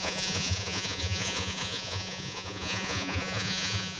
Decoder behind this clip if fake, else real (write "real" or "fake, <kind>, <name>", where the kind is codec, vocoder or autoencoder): fake, vocoder, Vocos